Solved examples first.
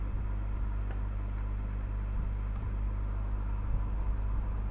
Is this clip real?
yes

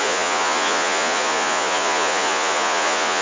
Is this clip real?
no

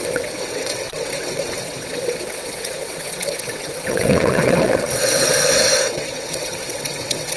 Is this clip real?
no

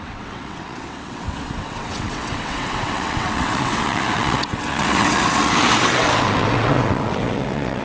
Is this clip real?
no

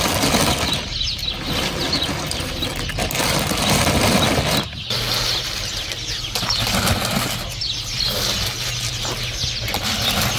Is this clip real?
yes